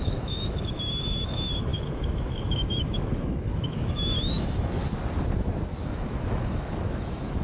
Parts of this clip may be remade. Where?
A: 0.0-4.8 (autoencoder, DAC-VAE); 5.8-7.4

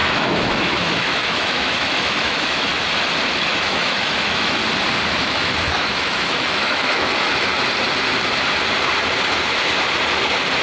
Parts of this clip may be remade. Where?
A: 0.0-2.7 (autoencoder, DAC-VAE); 3.5-4.6; 5.2-7.5

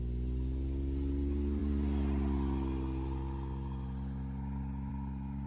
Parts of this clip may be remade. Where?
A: none